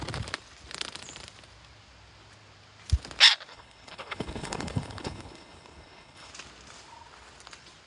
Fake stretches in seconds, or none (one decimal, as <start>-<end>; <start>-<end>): 3.5-6.3